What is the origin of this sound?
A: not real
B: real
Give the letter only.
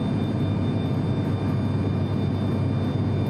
B